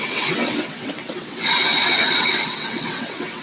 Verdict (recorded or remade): remade